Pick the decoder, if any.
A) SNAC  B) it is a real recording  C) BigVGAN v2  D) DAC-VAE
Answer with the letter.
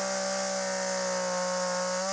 B